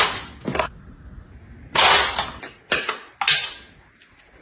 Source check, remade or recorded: recorded